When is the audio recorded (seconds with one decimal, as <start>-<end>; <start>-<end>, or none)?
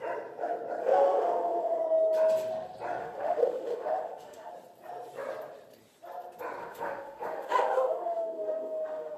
0.0-0.8; 1.8-3.0; 4.5-6.6